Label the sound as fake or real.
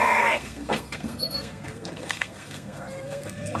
fake